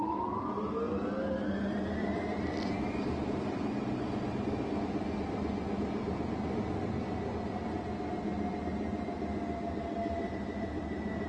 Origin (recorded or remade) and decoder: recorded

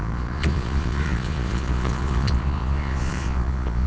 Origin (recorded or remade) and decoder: remade, vocoder, Vocos